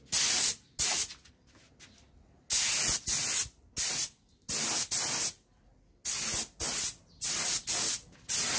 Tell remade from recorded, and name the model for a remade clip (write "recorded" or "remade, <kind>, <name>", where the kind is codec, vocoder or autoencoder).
recorded